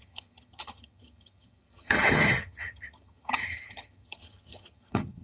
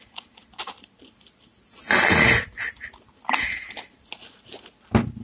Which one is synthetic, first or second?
first